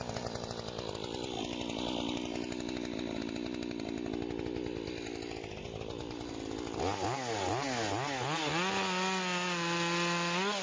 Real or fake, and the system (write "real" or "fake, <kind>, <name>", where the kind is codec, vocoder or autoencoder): real